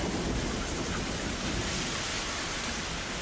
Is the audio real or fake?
real